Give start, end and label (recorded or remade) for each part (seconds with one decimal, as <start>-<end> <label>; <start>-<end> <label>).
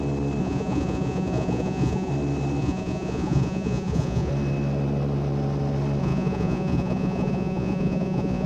0.0-0.4 recorded; 0.4-2.1 remade; 2.1-2.6 recorded; 2.6-4.3 remade; 4.3-6.0 recorded; 6.0-8.5 remade